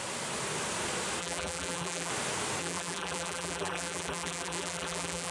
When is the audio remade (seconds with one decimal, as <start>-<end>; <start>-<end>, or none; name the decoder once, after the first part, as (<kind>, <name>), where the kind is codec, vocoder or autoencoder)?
1.2-2.1 (vocoder, BigVGAN v2); 2.6-5.3